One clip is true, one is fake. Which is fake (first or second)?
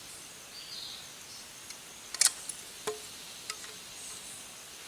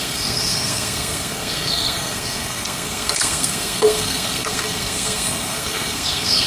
second